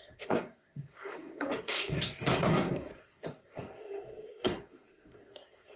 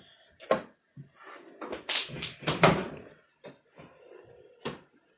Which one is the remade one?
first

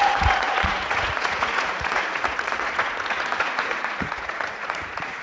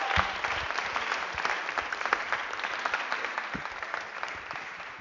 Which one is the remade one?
first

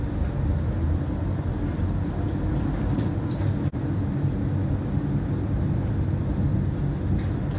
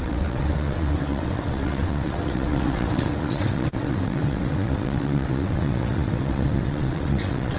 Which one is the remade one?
second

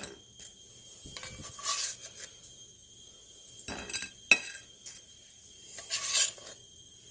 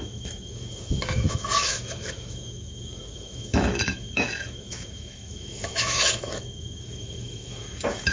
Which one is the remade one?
second